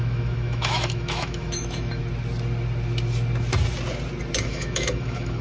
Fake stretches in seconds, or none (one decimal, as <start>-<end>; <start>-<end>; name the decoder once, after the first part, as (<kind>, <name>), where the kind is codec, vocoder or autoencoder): 0.0-2.0 (autoencoder, DAC-VAE); 4.4-5.4